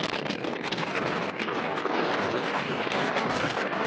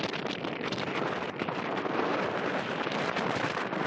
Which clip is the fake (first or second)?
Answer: first